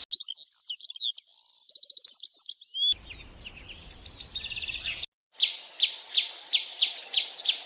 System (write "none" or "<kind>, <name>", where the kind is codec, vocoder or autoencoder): none